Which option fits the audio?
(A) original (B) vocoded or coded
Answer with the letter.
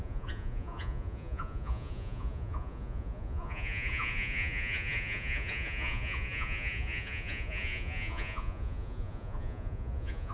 B